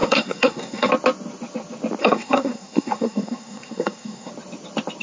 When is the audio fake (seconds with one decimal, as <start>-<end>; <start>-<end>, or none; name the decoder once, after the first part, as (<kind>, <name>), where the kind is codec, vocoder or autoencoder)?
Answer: 0.0-0.9 (codec, SNAC); 2.0-4.3